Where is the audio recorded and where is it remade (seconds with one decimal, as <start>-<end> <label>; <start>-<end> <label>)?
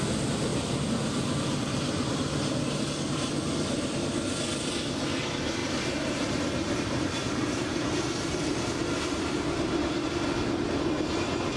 0.0-5.6 recorded; 5.6-10.1 remade; 10.1-11.6 recorded